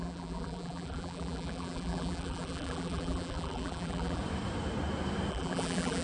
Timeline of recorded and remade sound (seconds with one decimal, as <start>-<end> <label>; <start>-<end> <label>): 0.0-4.2 remade; 4.2-5.3 recorded; 5.3-6.0 remade